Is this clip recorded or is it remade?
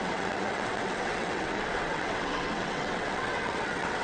remade